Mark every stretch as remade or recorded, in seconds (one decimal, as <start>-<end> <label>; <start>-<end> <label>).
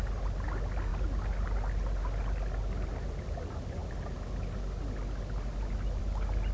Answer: 0.0-6.5 recorded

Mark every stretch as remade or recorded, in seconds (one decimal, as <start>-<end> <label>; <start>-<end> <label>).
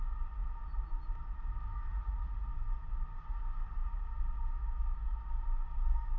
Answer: 0.0-1.9 recorded; 1.9-2.5 remade; 2.5-6.2 recorded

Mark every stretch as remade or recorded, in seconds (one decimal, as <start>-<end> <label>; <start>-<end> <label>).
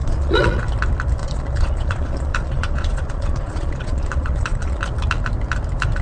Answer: 0.0-0.6 remade; 0.6-1.2 recorded; 1.2-4.8 remade; 4.8-6.0 recorded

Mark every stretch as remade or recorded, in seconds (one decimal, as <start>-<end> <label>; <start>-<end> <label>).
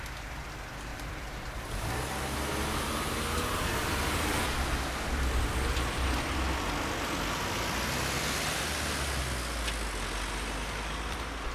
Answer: 0.0-0.9 recorded; 0.9-2.5 remade; 2.5-11.5 recorded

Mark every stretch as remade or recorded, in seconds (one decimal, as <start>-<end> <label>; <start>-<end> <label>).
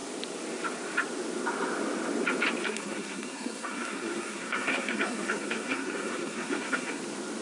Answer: 0.0-2.6 recorded; 2.6-7.0 remade; 7.0-7.4 recorded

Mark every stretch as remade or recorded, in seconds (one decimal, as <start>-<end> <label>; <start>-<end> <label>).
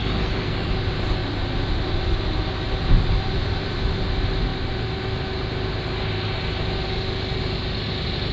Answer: 0.0-0.7 remade; 0.7-8.3 recorded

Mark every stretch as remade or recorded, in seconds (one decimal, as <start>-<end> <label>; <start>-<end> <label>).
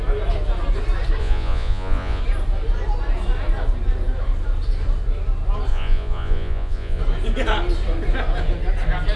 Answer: 0.0-1.2 recorded; 1.2-2.2 remade; 2.2-5.7 recorded; 5.7-7.0 remade; 7.0-9.2 recorded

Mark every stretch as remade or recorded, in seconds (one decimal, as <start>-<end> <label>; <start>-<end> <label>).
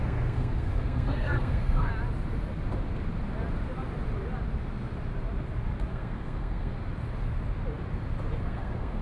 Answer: 0.0-1.9 remade; 1.9-5.9 recorded; 5.9-6.7 remade; 6.7-8.4 recorded; 8.4-9.0 remade